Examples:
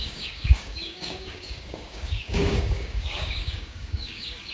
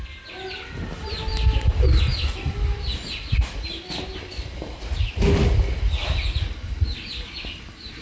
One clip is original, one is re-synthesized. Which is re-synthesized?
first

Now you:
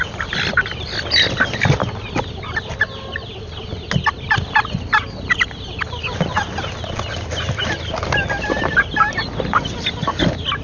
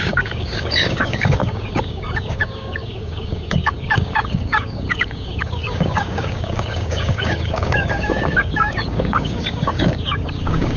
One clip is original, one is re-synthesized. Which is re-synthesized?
second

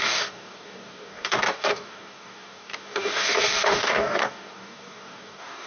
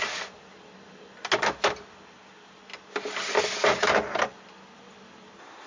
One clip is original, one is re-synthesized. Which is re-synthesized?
first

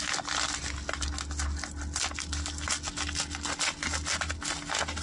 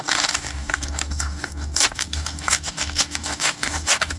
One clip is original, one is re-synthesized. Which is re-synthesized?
second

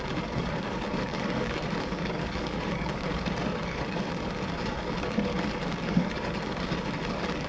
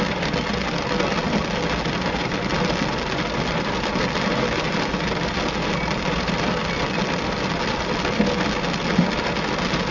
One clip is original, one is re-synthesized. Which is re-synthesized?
first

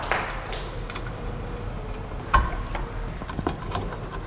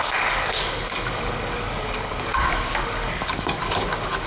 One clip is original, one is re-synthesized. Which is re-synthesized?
second